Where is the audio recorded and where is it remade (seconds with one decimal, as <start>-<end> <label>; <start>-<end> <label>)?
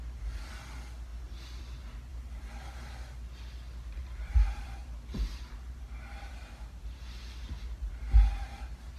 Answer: 0.0-2.1 recorded; 2.1-2.9 remade; 2.9-4.0 recorded; 4.0-6.8 remade; 6.8-9.0 recorded